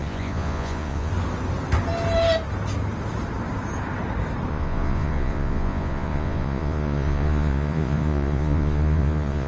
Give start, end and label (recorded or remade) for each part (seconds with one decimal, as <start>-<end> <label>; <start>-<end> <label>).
0.0-1.1 remade; 1.1-4.5 recorded; 4.5-9.5 remade